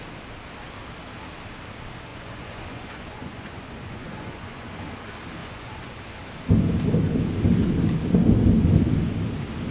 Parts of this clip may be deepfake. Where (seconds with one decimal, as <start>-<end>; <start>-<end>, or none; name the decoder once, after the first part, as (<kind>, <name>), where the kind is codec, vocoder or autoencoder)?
2.1-4.7 (vocoder, Vocos); 5.4-6.0